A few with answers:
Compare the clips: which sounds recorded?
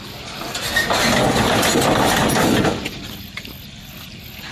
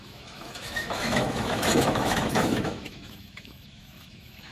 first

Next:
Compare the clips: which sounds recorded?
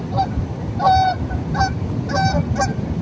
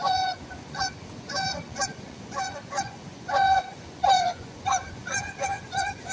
first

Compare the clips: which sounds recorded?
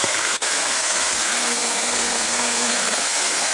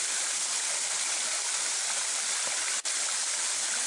second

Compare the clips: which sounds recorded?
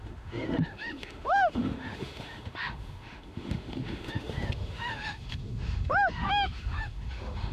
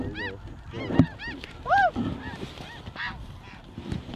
second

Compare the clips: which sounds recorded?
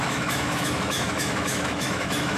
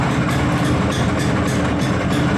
second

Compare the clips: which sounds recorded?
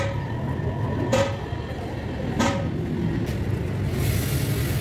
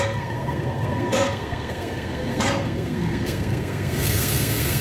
first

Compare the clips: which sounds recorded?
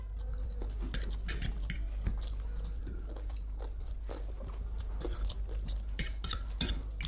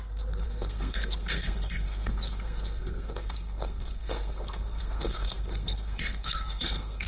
first